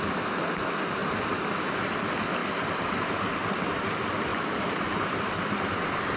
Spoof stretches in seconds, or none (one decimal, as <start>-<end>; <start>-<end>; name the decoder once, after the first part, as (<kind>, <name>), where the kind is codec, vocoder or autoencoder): 4.3-5.2 (vocoder, BigVGAN v2)